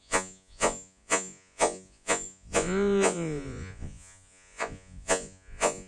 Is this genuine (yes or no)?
no